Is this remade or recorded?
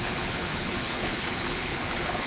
remade